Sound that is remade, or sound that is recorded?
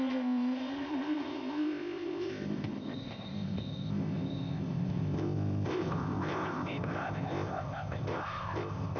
remade